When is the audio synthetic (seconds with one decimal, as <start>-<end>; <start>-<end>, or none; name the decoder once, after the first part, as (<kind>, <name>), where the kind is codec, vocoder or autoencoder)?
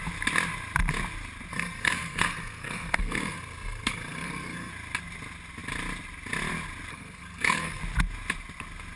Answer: 1.5-4.7 (codec, SNAC); 6.9-7.8